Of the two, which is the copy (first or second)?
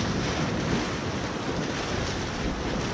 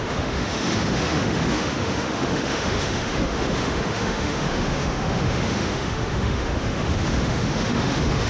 second